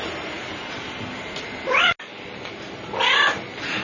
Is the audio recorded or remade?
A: recorded